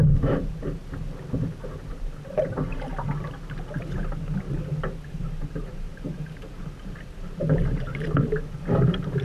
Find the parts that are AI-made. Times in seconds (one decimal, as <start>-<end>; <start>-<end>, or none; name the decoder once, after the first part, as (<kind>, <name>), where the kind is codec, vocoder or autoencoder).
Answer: 0.0-0.8 (vocoder, BigVGAN v2); 1.9-2.9; 5.1-9.2